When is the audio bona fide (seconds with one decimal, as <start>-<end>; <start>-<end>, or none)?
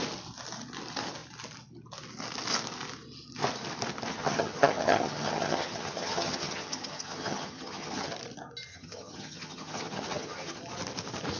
0.0-4.1; 8.1-8.7; 10.6-11.4